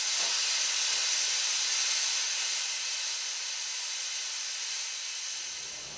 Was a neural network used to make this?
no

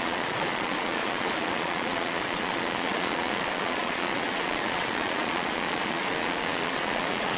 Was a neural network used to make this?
yes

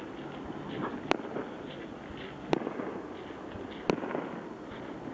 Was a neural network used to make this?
no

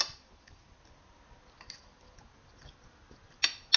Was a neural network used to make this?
no